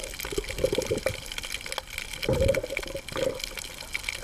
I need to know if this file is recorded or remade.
recorded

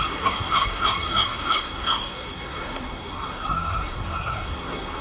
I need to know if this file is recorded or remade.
remade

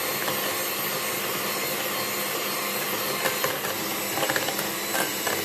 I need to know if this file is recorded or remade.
recorded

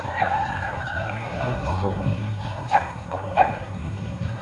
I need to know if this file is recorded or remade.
remade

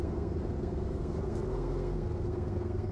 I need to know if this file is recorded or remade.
remade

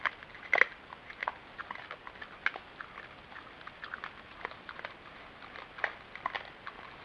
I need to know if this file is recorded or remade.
recorded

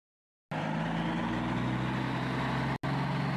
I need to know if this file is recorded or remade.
recorded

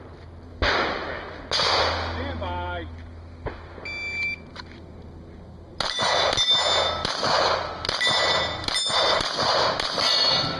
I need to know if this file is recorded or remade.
recorded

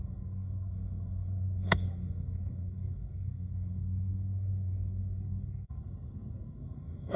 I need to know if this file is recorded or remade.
remade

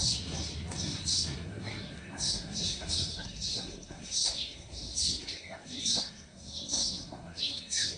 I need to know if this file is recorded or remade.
remade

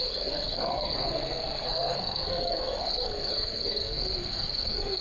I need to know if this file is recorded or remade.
remade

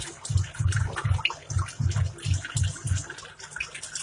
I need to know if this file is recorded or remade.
recorded